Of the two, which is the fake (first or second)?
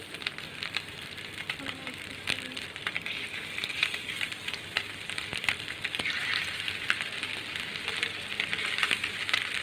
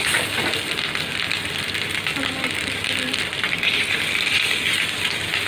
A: first